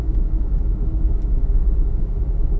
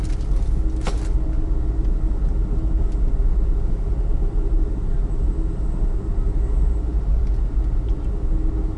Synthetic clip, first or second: first